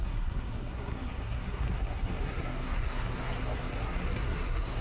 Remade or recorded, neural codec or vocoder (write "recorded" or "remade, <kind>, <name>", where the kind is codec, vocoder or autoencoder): remade, codec, SNAC